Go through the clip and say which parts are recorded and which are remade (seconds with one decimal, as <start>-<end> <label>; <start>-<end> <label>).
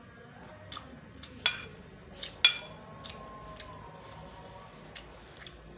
0.0-5.8 recorded